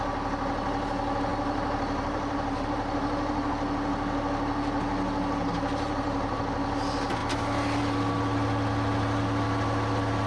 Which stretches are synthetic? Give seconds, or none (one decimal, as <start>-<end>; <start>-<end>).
1.3-3.5; 5.5-6.4